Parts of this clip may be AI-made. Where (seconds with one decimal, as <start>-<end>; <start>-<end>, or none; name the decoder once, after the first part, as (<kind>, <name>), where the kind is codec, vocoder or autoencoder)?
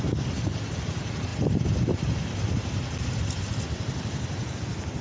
none